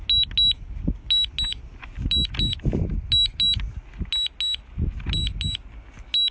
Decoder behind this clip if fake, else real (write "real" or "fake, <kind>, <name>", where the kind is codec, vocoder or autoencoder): real